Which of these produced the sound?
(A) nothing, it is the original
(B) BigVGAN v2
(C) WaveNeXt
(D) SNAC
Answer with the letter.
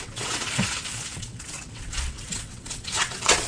C